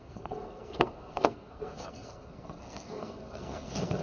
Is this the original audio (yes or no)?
no